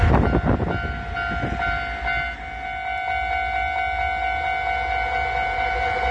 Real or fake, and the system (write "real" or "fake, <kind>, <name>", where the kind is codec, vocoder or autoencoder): real